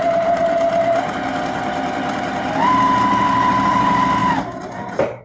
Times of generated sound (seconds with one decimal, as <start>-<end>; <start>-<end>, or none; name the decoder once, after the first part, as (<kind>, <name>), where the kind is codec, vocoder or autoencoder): 0.0-0.4 (vocoder, BigVGAN v2); 3.5-5.2